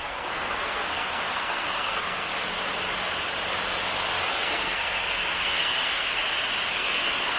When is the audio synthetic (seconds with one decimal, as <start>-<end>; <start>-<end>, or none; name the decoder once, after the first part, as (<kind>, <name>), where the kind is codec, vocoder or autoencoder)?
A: 0.0-2.3 (codec, SNAC); 4.3-6.2; 6.7-7.4